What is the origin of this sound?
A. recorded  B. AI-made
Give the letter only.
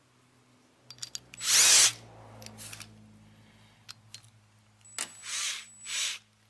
A